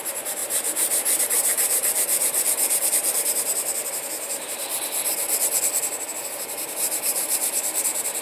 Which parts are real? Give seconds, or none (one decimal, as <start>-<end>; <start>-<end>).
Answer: 4.6-6.7